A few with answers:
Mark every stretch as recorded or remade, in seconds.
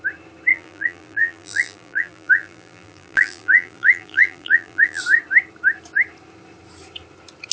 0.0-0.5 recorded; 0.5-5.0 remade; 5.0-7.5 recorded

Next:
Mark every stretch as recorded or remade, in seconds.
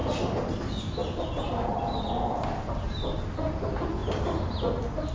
0.0-5.1 recorded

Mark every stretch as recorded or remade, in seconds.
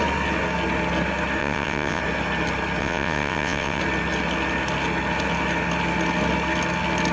0.0-1.4 recorded; 1.4-2.0 remade; 2.0-2.8 recorded; 2.8-3.8 remade; 3.8-7.1 recorded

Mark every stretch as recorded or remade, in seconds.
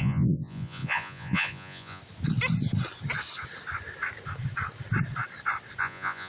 0.0-2.0 remade; 2.0-5.8 recorded; 5.8-6.3 remade